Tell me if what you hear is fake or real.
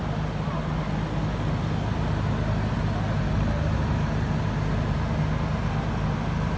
real